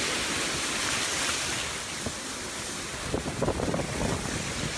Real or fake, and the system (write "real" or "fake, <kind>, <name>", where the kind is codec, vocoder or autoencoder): real